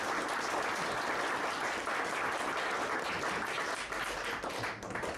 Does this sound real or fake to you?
real